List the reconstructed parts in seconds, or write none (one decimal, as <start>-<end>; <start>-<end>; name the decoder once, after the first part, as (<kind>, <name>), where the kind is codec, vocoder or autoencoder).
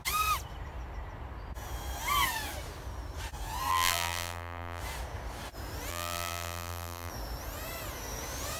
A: 3.7-4.8 (vocoder, BigVGAN v2); 5.9-7.1